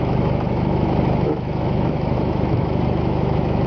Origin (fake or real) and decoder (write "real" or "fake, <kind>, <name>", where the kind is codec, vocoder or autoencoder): fake, autoencoder, DAC-VAE